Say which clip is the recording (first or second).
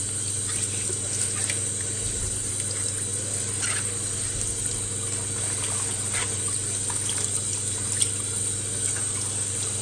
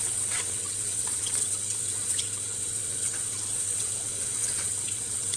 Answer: first